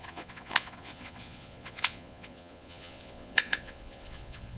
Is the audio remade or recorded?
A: remade